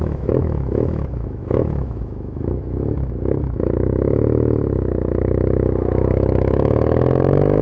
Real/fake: fake